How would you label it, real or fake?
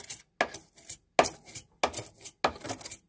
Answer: real